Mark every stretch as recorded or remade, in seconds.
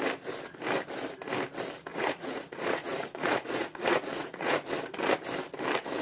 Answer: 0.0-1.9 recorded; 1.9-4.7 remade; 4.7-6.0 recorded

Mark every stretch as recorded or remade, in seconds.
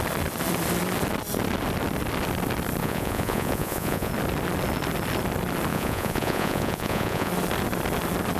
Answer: 0.0-2.8 recorded; 2.8-4.1 remade; 4.1-5.7 recorded; 5.7-7.3 remade; 7.3-8.4 recorded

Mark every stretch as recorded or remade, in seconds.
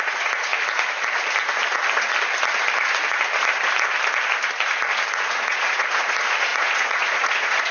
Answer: 0.0-0.5 remade; 0.5-5.1 recorded; 5.1-7.7 remade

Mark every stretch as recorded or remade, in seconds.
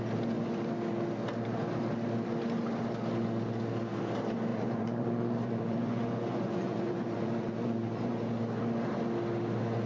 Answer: 0.0-4.5 recorded; 4.5-8.1 remade; 8.1-9.9 recorded